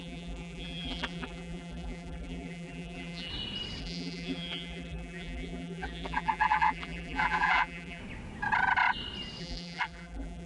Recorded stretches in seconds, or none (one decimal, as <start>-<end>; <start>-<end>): 3.3-3.8; 8.0-9.4